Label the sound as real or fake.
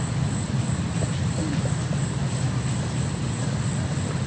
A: real